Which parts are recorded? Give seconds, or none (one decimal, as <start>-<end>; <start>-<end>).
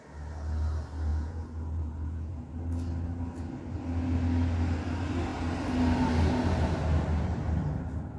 0.0-1.1; 2.5-8.2